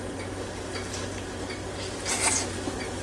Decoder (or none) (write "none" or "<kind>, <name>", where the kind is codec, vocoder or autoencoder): none